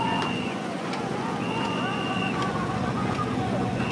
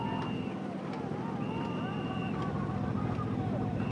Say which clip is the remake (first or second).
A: first